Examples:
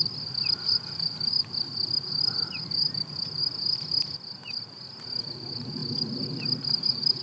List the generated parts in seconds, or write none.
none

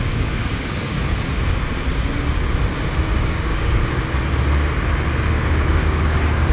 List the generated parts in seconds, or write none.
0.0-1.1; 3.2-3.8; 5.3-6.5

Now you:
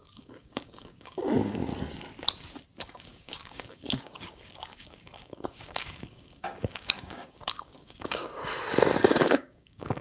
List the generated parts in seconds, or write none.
0.0-1.7; 2.8-8.4; 9.0-10.0

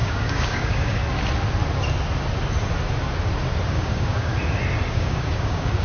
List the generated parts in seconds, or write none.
0.0-1.0; 3.7-4.3; 4.9-5.8

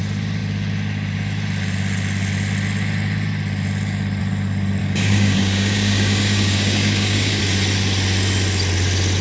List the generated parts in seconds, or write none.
4.8-7.4

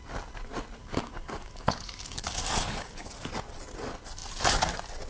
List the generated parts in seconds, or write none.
0.8-3.1